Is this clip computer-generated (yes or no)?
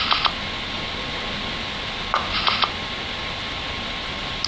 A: no